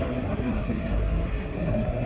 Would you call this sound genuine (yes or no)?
no